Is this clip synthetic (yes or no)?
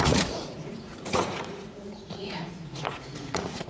yes